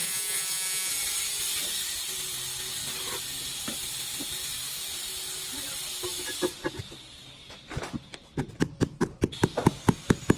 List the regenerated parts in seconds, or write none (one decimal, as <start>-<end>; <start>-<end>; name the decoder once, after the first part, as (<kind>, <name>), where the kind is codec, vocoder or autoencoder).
0.0-0.9 (vocoder, Vocos)